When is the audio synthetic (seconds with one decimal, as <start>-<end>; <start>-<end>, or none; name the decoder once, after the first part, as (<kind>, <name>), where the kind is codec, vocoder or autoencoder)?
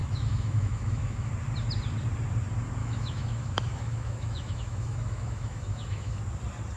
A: 0.0-1.3 (autoencoder, DAC-VAE); 2.8-6.2